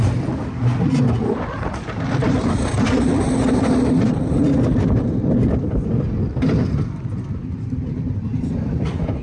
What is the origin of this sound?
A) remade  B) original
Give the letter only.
A